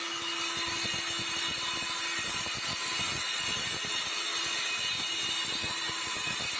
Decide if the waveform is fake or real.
real